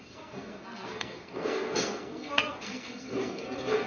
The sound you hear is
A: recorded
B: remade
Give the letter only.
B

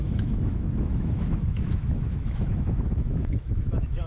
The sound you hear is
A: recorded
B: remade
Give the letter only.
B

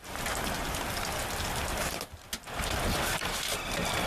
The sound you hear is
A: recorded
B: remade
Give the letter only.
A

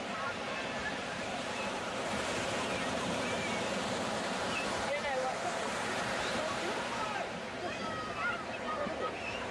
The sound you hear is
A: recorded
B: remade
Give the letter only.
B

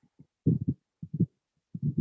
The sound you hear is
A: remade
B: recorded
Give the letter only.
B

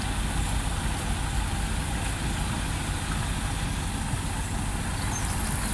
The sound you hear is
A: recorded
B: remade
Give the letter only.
A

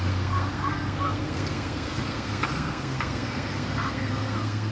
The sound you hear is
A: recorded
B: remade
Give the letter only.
B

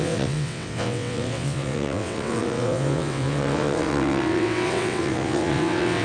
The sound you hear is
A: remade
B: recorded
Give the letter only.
A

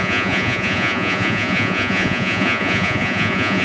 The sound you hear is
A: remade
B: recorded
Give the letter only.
A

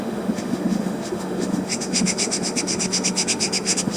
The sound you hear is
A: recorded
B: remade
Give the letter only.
B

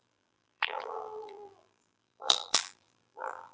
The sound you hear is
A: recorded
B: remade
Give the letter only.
B